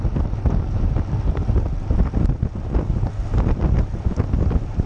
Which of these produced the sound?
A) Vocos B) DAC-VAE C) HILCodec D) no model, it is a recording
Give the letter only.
D